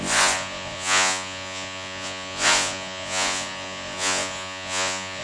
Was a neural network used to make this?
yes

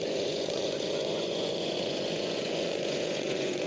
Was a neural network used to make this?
yes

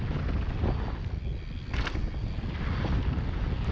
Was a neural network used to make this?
no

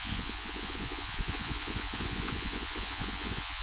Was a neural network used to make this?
yes